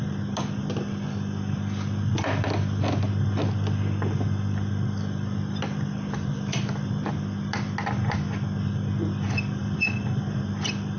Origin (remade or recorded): recorded